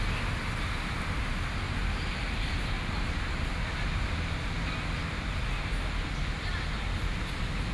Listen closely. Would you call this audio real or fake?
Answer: real